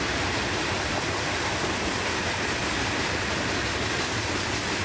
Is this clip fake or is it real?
fake